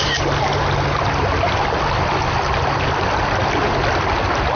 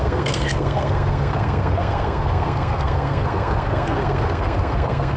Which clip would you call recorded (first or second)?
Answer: first